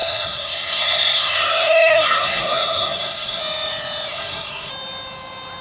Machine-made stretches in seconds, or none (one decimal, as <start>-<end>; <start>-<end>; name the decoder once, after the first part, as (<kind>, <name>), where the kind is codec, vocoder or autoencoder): 0.0-3.4 (codec, SNAC); 4.1-4.7